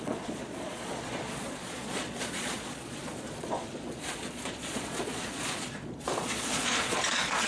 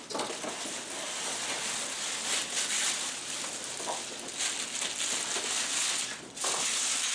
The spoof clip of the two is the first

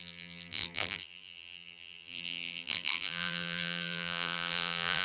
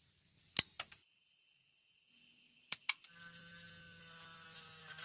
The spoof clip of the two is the first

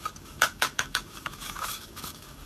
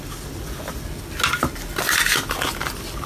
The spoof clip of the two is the first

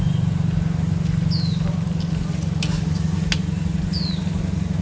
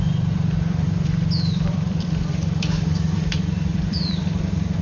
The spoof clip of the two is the second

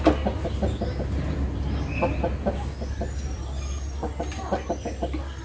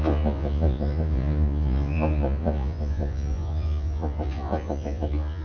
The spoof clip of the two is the second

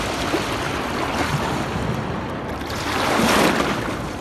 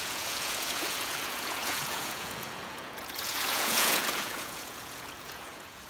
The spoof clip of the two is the second